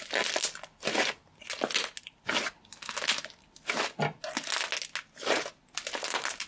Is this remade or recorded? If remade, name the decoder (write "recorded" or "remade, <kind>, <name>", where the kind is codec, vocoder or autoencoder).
recorded